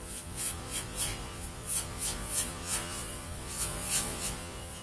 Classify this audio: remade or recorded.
remade